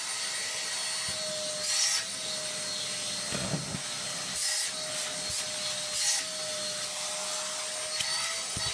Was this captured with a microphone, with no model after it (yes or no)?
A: yes